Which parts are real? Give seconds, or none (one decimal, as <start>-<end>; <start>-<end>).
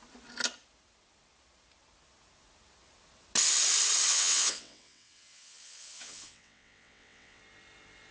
0.0-4.1; 7.4-8.1